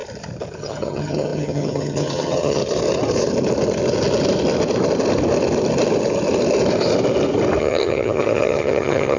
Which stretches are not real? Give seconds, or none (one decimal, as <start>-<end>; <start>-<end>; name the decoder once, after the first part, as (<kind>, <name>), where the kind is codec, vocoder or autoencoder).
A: 0.6-2.6 (vocoder, HiFi-GAN); 7.6-9.2